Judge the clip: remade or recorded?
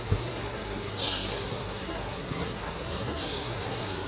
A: remade